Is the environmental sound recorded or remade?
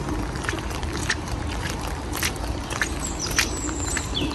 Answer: recorded